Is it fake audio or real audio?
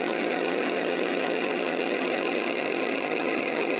fake